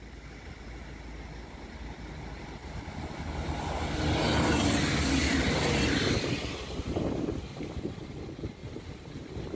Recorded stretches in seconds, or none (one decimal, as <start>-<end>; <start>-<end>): 0.0-9.6